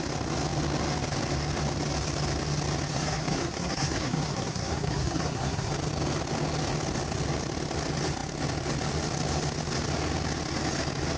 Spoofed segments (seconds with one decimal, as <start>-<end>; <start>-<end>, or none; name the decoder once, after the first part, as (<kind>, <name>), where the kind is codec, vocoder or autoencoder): 2.9-5.7 (codec, SNAC)